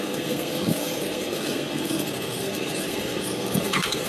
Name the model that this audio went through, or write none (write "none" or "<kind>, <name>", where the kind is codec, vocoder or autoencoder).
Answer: codec, SNAC